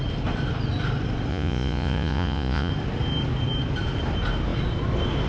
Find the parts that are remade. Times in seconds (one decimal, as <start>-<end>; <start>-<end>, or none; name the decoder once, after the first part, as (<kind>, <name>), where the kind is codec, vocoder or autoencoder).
1.3-2.7 (vocoder, Vocos)